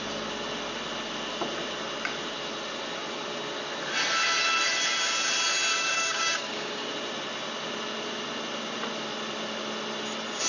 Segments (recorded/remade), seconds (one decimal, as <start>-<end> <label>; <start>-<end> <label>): 0.0-5.7 recorded; 5.7-6.9 remade; 6.9-10.5 recorded

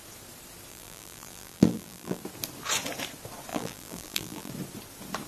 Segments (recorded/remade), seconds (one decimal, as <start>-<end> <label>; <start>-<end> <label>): 0.0-0.7 recorded; 0.7-2.2 remade; 2.2-3.5 recorded; 3.5-4.5 remade; 4.5-5.3 recorded